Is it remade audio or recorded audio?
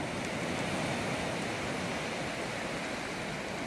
recorded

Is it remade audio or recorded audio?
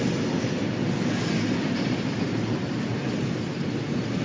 recorded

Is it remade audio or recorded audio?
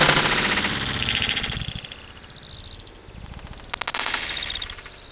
recorded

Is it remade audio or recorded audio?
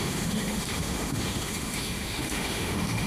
remade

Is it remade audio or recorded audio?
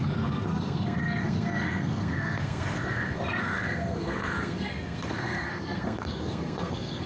remade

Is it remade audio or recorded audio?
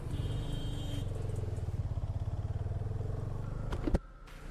recorded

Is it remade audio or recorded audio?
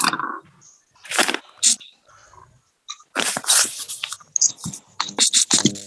recorded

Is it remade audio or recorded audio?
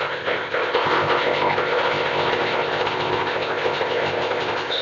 remade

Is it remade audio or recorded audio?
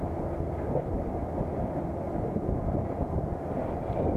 recorded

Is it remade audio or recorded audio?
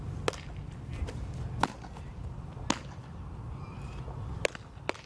recorded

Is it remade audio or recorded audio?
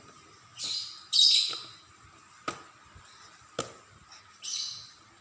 recorded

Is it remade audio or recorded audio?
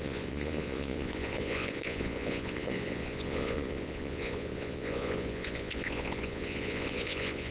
remade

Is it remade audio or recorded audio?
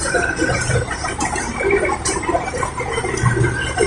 remade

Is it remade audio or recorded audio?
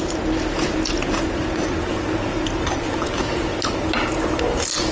recorded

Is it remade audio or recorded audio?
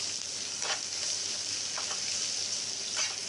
recorded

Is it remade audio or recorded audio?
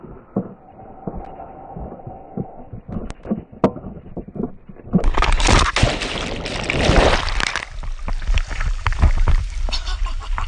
recorded